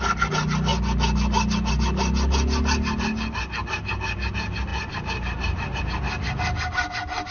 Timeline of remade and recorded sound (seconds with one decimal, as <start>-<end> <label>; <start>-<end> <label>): 0.0-7.3 recorded